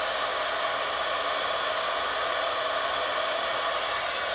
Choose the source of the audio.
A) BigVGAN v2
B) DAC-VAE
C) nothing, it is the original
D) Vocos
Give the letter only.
C